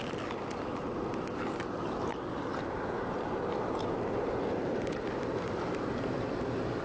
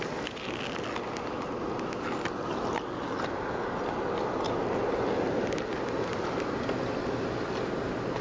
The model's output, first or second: first